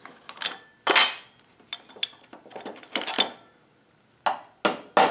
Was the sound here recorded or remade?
recorded